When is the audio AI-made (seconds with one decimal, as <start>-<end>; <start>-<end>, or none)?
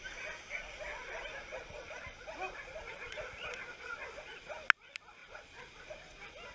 1.5-2.2; 2.7-4.4; 5.2-5.7